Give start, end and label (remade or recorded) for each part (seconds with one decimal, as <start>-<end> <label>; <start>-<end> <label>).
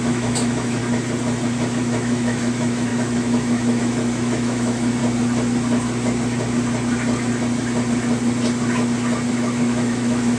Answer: 0.0-0.8 remade; 0.8-1.8 recorded; 1.8-5.0 remade; 5.0-9.3 recorded; 9.3-10.4 remade